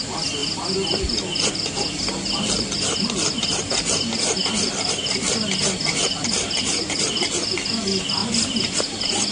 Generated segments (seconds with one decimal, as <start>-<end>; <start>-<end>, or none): none